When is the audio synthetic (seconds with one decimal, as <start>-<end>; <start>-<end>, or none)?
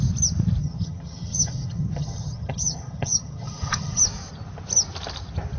0.6-4.0